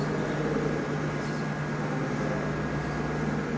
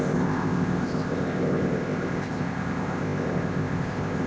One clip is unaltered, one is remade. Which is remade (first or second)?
second